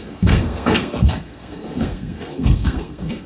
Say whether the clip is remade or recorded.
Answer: remade